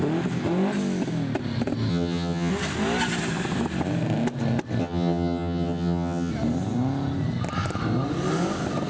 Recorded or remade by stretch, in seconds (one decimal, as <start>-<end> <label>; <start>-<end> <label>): 0.0-1.9 recorded; 1.9-2.5 remade; 2.5-4.8 recorded; 4.8-6.3 remade; 6.3-8.9 recorded